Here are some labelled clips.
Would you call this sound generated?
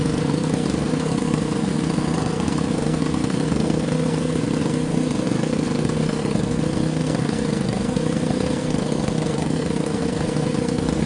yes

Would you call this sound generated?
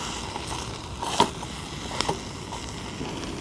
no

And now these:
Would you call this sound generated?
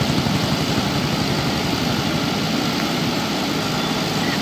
no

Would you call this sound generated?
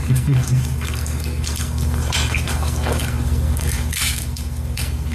yes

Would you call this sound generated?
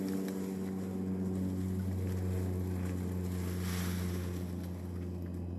no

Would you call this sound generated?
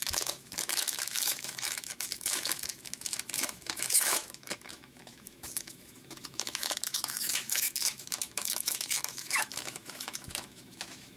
yes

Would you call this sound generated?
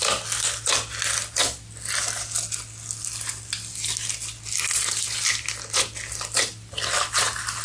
no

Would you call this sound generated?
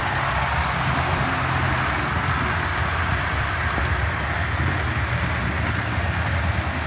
no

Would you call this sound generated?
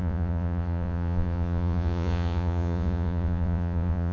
yes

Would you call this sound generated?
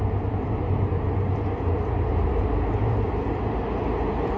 yes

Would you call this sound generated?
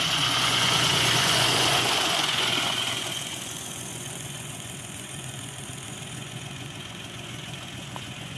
yes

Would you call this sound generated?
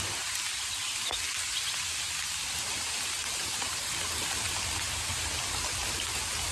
no